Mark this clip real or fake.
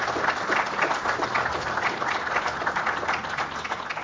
real